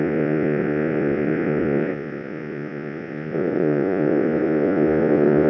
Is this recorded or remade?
remade